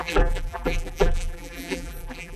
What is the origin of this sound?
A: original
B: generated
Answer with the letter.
B